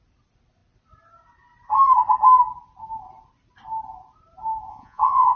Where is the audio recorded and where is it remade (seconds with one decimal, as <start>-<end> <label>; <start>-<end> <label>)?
0.0-4.7 recorded; 4.7-5.4 remade